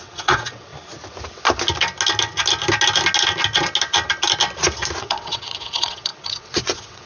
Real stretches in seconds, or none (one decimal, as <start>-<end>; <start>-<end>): 0.7-5.0